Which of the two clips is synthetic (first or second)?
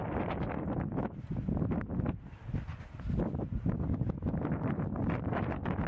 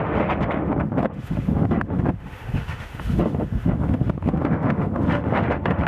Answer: second